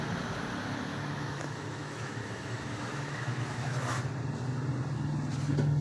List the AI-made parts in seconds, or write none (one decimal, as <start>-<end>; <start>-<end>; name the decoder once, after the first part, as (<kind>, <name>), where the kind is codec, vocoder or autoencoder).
0.9-4.0 (autoencoder, DAC-VAE)